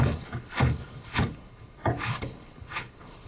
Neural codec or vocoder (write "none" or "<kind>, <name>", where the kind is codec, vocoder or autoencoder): codec, HILCodec